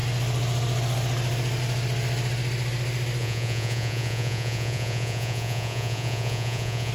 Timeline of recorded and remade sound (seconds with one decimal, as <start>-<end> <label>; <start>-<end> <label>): 0.0-3.2 recorded; 3.2-6.9 remade